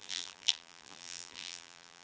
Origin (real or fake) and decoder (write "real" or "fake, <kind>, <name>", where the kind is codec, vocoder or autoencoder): fake, vocoder, BigVGAN v2